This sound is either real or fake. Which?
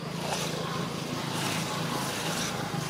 real